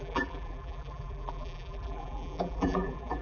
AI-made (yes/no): yes